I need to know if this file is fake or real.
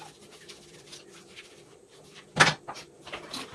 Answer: fake